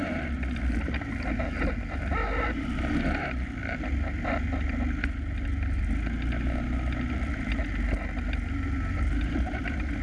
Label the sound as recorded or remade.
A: recorded